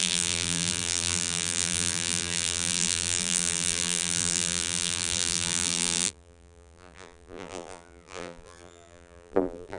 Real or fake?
fake